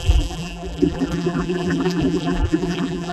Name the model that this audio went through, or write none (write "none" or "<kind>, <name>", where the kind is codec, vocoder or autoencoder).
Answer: vocoder, BigVGAN v2